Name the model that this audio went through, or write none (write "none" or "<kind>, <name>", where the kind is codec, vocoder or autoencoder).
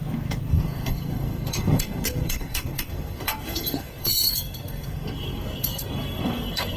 codec, SNAC